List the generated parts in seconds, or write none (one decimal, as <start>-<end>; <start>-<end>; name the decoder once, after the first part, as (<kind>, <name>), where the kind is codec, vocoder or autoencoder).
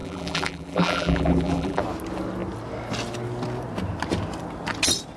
0.0-1.8 (vocoder, BigVGAN v2)